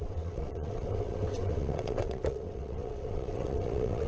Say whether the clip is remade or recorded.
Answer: remade